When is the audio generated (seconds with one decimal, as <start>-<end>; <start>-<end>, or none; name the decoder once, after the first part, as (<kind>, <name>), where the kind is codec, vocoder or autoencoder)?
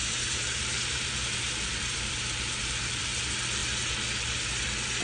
0.0-3.0 (vocoder, BigVGAN v2)